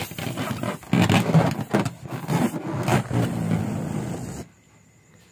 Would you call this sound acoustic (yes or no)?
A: yes